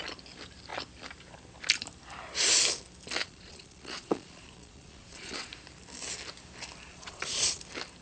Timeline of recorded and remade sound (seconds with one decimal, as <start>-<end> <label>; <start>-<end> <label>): 0.0-3.2 recorded; 3.2-5.5 remade; 5.5-6.9 recorded; 6.9-7.6 remade; 7.6-8.0 recorded